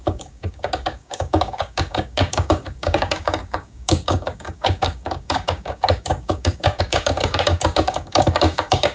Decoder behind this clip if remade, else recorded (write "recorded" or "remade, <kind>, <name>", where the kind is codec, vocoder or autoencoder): remade, codec, DAC